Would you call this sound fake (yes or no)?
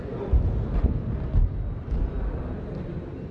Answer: no